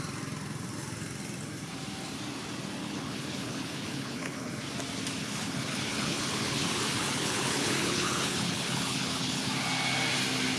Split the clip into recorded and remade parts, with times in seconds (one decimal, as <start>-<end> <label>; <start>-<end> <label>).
0.0-2.8 recorded; 2.8-4.5 remade; 4.5-5.2 recorded; 5.2-9.5 remade; 9.5-10.6 recorded